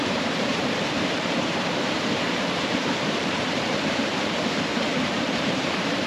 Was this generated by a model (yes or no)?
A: yes